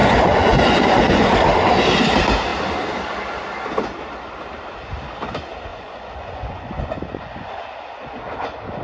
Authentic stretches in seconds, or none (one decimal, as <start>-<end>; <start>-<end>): 1.3-5.7; 7.6-8.8